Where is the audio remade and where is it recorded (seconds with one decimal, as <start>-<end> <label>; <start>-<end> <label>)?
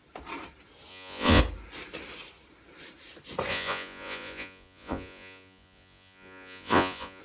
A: 0.0-0.9 recorded; 0.9-1.4 remade; 1.4-3.5 recorded; 3.5-7.2 remade